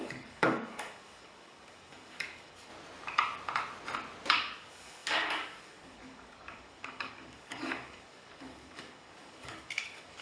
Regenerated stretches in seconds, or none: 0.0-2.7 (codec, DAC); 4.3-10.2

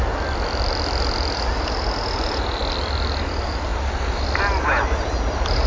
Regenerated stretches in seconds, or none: none